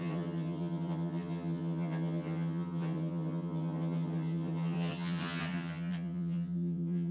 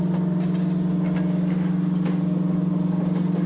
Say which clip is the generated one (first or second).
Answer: first